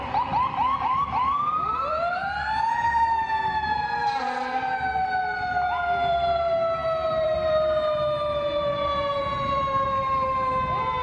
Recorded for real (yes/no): no